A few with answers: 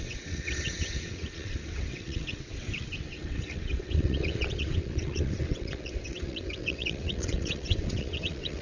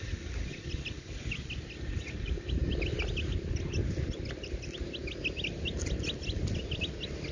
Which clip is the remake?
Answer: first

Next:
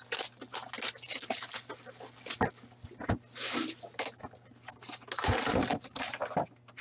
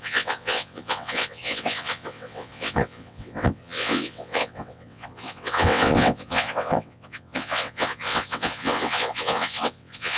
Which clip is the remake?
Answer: second